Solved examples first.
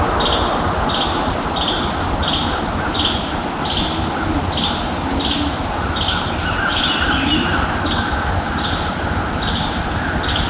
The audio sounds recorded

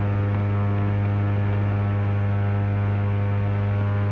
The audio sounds recorded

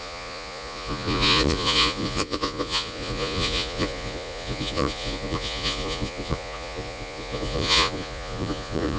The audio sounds remade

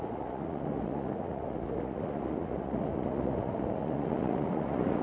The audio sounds remade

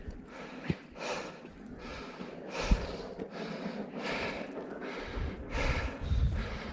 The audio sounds recorded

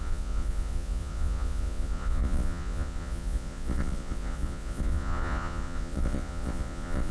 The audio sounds remade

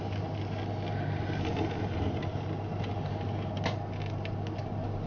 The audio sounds recorded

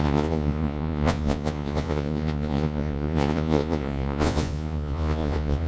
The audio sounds remade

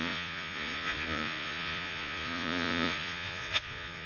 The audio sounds remade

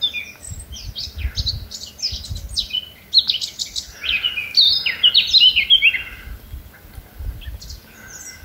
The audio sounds recorded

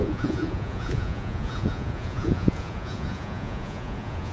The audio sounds remade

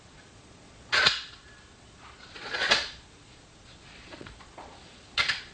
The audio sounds remade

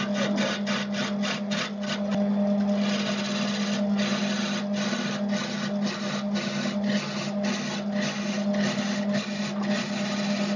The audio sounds recorded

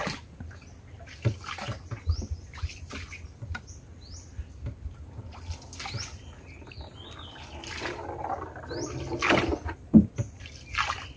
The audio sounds recorded